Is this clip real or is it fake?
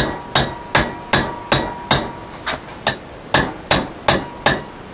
real